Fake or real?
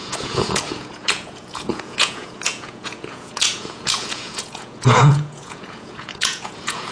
fake